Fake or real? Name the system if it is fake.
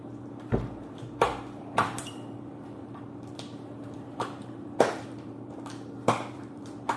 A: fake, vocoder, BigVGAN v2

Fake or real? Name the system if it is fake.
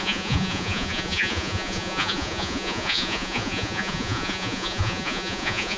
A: fake, vocoder, Vocos